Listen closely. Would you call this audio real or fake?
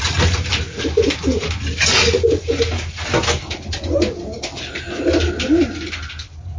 real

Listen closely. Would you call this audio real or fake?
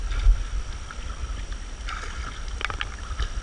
real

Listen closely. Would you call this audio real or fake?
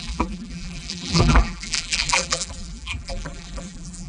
fake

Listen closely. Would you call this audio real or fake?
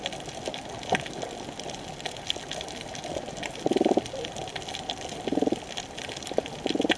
real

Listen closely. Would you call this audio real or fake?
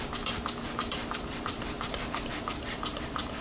fake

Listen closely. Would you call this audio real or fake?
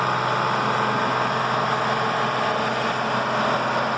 real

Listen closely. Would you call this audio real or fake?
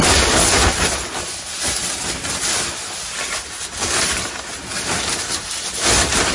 real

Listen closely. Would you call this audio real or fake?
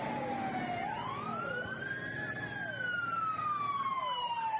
real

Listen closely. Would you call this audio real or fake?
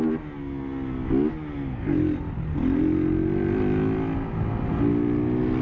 real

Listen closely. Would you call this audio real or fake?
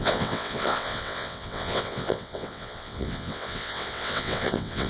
fake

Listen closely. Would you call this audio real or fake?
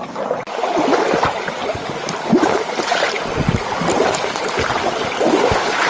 real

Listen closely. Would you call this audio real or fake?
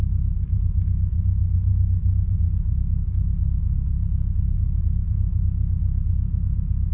fake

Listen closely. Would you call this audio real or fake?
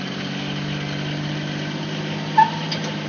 real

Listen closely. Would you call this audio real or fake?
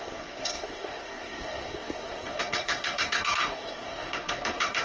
fake